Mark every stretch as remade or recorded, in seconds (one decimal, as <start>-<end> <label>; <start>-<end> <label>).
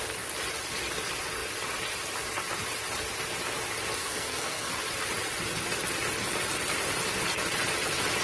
0.0-4.0 recorded; 4.0-4.8 remade; 4.8-8.2 recorded